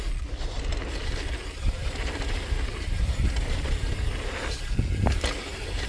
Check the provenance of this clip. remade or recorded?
recorded